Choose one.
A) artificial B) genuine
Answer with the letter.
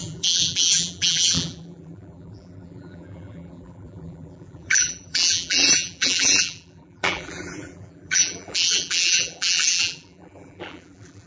A